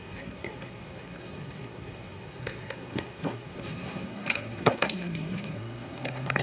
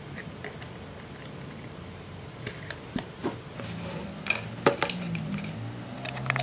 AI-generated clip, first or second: first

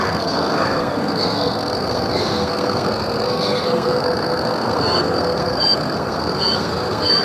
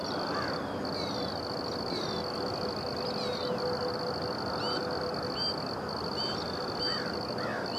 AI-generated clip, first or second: first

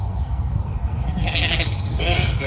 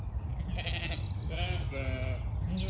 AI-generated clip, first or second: first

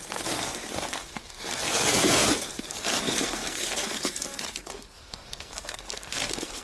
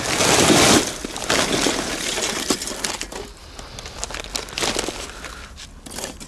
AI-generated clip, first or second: first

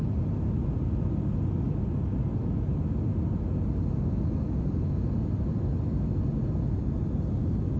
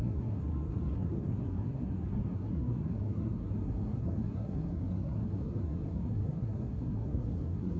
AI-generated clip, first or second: second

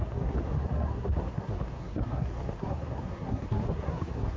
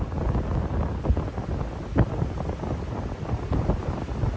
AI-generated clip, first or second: first